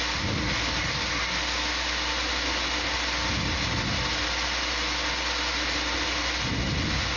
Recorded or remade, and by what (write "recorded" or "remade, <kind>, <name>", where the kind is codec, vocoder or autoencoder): recorded